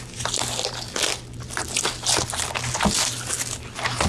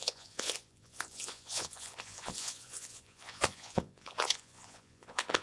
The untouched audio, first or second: first